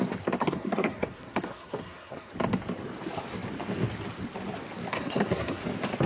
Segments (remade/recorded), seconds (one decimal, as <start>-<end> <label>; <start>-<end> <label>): 0.0-0.4 recorded; 0.4-2.3 remade; 2.3-4.9 recorded; 4.9-5.6 remade; 5.6-6.1 recorded